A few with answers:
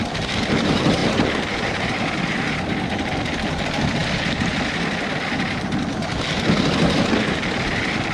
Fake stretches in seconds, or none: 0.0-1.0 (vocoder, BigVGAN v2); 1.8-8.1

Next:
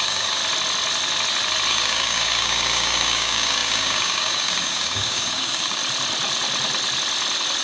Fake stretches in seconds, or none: 0.0-0.4 (codec, DAC); 1.7-5.8

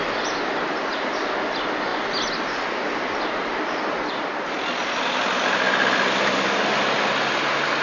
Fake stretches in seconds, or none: none